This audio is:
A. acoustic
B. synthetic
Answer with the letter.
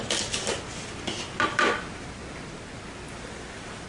A